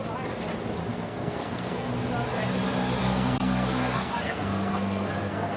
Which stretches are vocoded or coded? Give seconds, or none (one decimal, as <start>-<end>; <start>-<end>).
0.9-1.9; 3.0-5.6